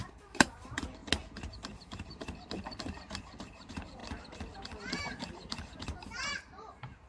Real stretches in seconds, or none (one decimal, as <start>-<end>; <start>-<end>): 1.0-1.5; 4.0-4.8